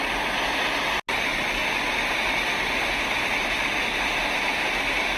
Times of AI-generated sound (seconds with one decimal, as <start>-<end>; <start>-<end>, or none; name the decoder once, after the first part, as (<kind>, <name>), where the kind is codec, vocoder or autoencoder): none